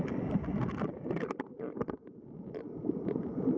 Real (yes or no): yes